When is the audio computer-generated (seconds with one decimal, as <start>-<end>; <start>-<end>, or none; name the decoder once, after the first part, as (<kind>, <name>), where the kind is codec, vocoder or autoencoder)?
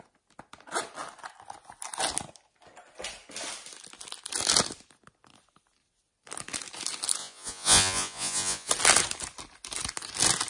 7.2-8.7 (vocoder, Vocos)